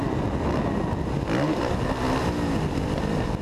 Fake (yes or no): no